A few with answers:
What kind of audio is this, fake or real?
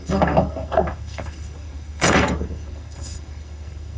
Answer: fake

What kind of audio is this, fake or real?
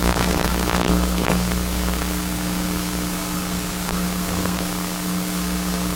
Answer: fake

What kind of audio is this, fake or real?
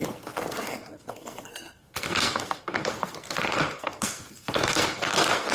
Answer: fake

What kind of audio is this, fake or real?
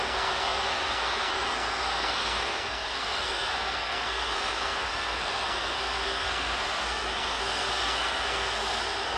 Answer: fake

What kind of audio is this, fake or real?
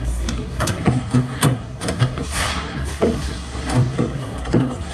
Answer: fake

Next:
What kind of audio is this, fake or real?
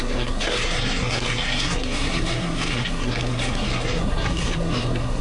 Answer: fake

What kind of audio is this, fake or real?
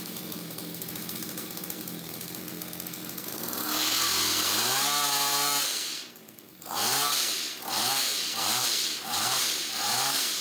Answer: fake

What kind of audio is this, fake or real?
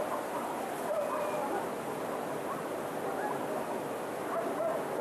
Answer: real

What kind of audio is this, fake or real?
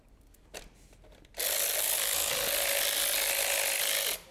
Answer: real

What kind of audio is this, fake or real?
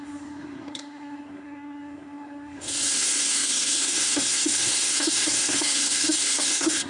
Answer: fake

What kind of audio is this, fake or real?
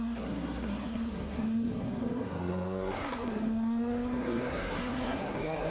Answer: fake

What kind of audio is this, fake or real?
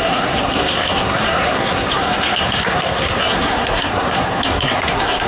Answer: fake